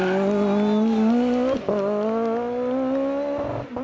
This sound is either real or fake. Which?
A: real